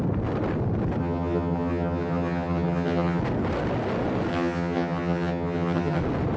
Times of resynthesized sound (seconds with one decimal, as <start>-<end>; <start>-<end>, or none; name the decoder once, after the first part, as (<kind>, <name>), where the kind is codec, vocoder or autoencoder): 1.0-3.2 (vocoder, HiFi-GAN); 4.3-6.0